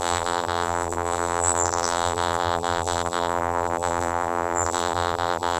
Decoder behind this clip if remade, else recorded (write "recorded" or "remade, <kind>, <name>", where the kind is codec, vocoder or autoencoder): remade, vocoder, BigVGAN v2